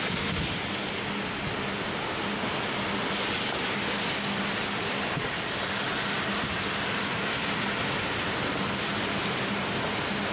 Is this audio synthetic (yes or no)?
no